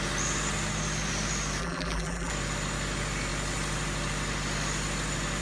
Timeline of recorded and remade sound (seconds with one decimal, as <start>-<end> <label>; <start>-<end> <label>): 0.0-1.6 recorded; 1.6-2.3 remade; 2.3-5.4 recorded